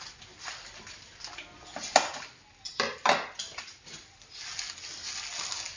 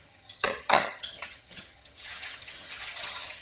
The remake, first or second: second